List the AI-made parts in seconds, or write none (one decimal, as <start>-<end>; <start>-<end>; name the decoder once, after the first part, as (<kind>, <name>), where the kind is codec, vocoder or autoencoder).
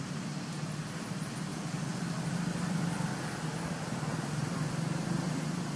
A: 1.5-3.4 (vocoder, BigVGAN v2); 4.1-4.7